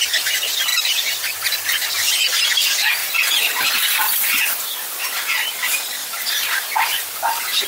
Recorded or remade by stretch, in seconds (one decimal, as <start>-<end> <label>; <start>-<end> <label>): 0.0-0.7 recorded; 0.7-1.8 remade; 1.8-3.0 recorded; 3.0-3.7 remade; 3.7-6.0 recorded; 6.0-7.2 remade; 7.2-7.7 recorded